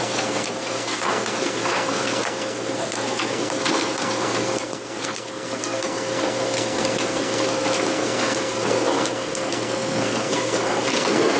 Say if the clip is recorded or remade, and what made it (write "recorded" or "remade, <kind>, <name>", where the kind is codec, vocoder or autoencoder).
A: remade, codec, SNAC